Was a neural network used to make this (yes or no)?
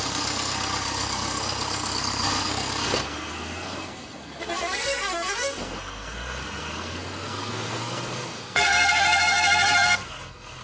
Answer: yes